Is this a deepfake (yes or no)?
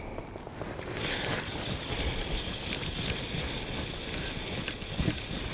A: no